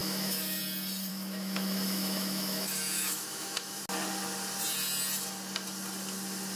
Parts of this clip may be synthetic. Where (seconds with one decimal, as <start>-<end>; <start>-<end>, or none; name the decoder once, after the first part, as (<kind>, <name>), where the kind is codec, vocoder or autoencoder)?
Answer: 0.0-0.6 (autoencoder, DAC-VAE); 1.1-3.8